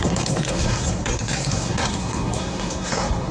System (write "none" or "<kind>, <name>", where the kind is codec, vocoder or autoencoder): codec, SNAC